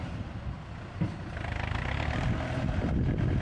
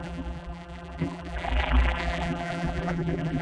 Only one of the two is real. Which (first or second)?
first